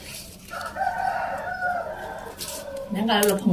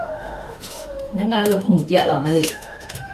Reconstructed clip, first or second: second